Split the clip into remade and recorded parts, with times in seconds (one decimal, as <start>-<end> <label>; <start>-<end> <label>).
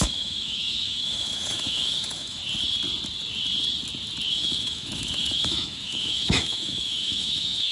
0.0-2.4 remade; 2.4-4.3 recorded; 4.3-7.7 remade